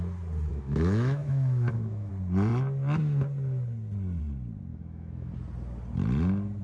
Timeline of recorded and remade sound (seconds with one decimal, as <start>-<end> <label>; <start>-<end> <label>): 0.0-0.5 recorded; 0.5-2.1 remade; 2.1-4.7 recorded; 4.7-5.3 remade; 5.3-6.6 recorded